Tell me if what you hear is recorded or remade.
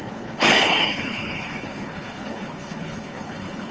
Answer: remade